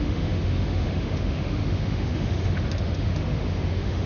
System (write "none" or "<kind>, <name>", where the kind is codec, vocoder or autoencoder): autoencoder, DAC-VAE